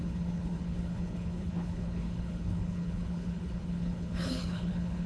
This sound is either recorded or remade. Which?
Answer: remade